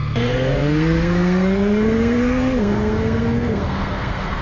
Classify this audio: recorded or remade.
remade